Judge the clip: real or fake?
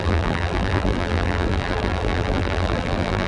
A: fake